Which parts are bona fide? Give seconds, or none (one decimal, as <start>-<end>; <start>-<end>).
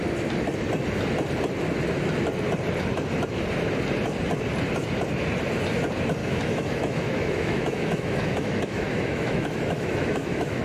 0.0-6.2